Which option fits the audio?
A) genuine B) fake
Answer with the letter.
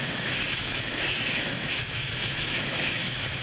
B